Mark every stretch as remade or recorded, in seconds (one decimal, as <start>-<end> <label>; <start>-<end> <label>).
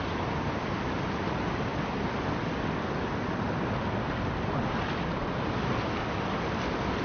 0.0-7.0 recorded